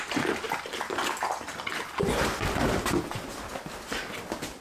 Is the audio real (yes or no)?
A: yes